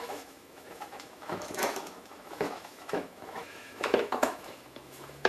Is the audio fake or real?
fake